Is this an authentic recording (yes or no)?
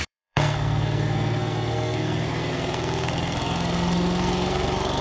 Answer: no